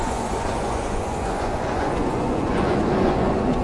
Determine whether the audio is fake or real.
fake